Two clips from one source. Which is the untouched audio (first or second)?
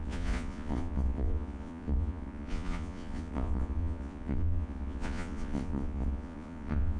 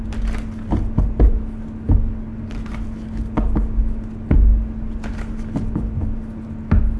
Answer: second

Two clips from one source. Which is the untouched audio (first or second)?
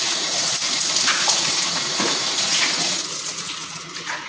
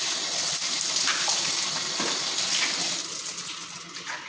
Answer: second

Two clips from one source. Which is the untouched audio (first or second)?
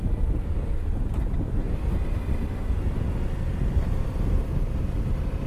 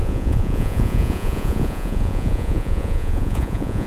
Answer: first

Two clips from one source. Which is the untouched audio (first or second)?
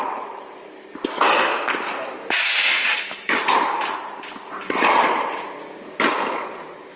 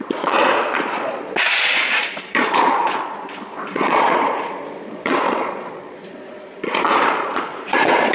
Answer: first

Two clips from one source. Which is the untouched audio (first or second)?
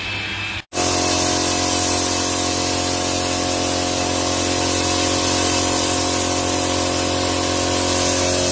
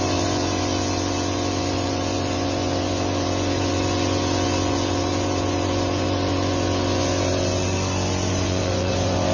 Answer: first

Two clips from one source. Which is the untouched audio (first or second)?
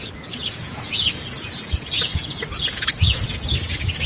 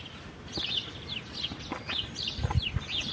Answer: second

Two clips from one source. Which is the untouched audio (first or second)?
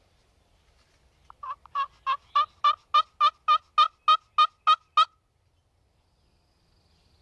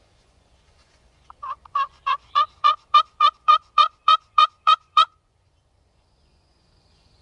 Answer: first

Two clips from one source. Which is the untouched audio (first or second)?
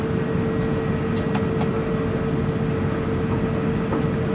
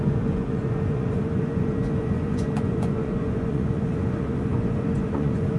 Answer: first